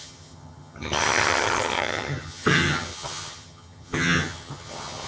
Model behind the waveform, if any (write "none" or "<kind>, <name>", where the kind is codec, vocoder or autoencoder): vocoder, HiFi-GAN